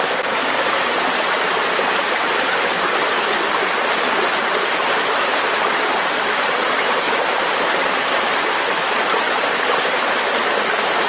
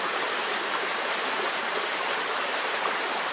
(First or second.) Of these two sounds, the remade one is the second